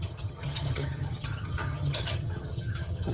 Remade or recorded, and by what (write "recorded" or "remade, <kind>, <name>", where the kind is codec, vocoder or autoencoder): remade, vocoder, HiFi-GAN